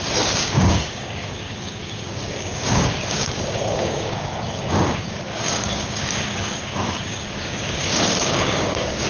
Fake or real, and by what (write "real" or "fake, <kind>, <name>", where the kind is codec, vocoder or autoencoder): fake, codec, DAC